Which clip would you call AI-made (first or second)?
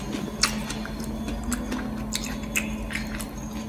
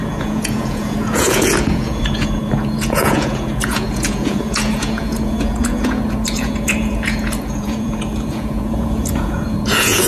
second